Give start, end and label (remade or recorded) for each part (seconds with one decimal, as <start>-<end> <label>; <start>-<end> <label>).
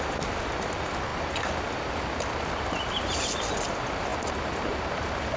0.0-5.4 recorded